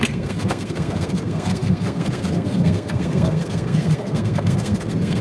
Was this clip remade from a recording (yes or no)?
yes